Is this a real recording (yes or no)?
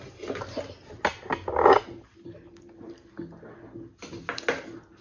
yes